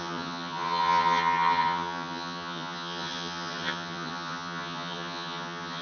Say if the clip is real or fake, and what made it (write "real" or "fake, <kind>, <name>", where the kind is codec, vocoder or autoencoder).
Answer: fake, vocoder, HiFi-GAN